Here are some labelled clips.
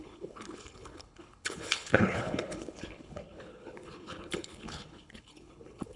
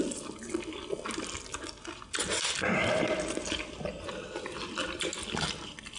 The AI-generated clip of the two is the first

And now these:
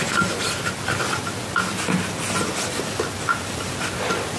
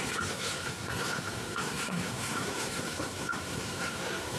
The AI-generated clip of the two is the second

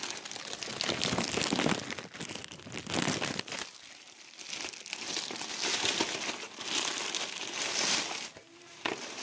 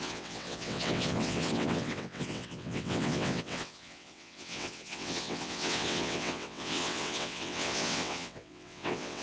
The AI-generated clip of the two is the second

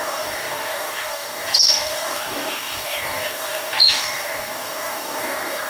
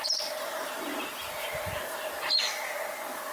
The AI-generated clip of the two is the first